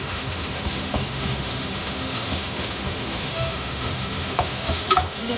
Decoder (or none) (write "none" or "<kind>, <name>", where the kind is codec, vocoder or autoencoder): autoencoder, DAC-VAE